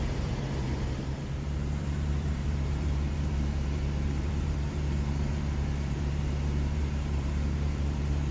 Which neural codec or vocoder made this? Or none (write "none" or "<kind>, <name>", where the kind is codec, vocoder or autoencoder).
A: vocoder, BigVGAN v2